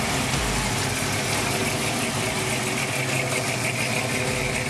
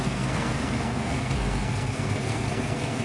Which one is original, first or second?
first